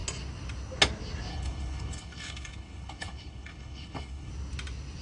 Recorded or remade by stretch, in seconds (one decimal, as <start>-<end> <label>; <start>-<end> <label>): 0.0-1.3 recorded; 1.3-4.3 remade; 4.3-5.0 recorded

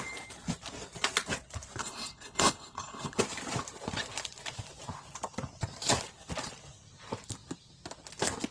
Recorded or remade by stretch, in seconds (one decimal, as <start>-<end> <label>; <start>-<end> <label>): 0.0-1.8 recorded; 1.8-3.2 remade; 3.2-8.5 recorded

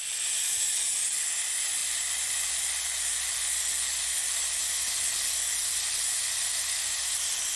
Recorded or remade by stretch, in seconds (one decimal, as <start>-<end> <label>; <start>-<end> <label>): 0.0-7.6 recorded

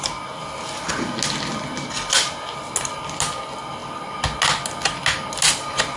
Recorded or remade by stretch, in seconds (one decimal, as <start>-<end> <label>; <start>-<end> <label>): 0.0-6.0 recorded

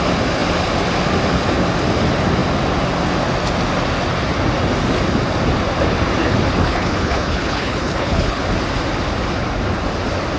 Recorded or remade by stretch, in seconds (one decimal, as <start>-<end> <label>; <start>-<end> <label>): 0.0-6.6 recorded; 6.6-8.4 remade; 8.4-10.4 recorded